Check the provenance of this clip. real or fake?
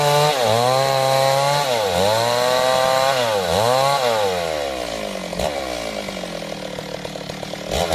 real